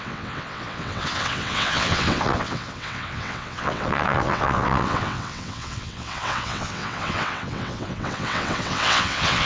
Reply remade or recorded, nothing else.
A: remade